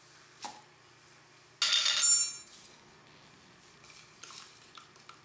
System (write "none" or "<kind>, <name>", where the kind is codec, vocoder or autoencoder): none